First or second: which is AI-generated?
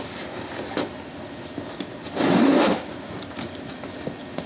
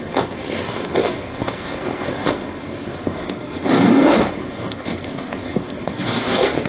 second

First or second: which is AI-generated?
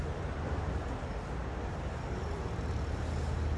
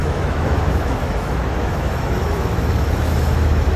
second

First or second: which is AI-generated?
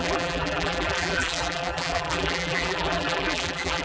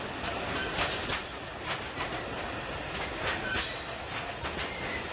first